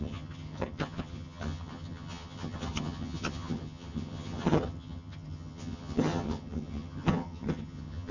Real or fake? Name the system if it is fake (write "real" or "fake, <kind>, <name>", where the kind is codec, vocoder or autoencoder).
fake, vocoder, HiFi-GAN